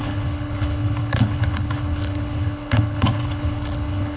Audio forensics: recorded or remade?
remade